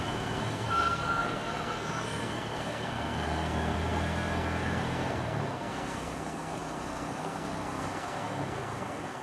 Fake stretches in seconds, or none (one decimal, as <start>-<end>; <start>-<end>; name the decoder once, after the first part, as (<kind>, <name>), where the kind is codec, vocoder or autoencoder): 0.0-9.2 (codec, SNAC)